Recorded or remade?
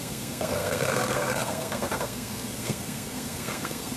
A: remade